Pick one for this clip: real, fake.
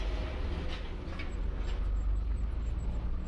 real